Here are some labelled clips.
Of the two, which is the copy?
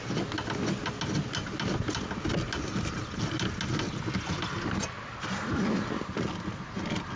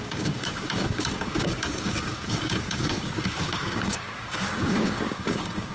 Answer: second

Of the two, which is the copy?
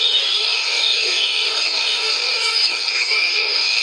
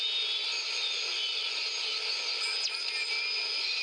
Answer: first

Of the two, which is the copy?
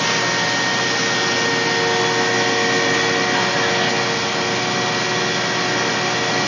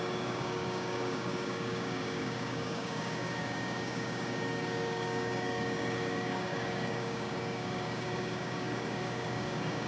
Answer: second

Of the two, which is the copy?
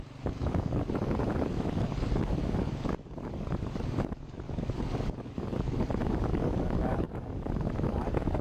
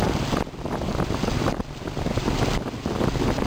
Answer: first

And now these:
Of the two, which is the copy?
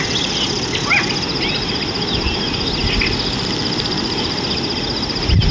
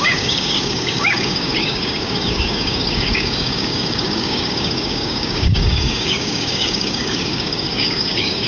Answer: second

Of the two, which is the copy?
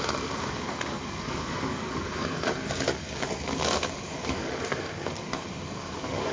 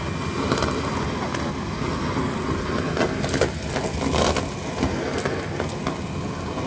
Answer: first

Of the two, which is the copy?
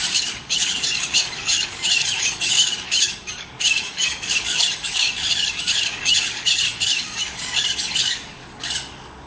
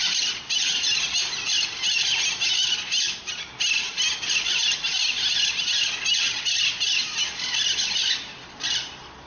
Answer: first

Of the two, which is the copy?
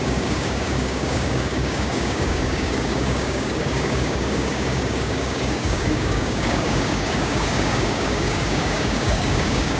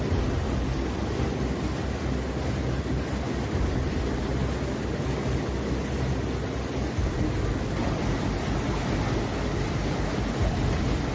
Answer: first